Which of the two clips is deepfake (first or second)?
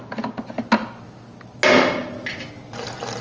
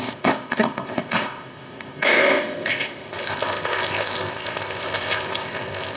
second